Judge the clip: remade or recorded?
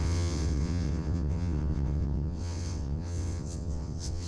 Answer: remade